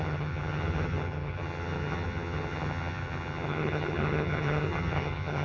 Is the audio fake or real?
fake